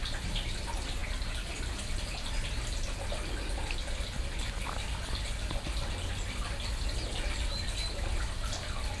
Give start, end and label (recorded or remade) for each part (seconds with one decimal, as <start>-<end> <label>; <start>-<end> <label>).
0.0-9.0 recorded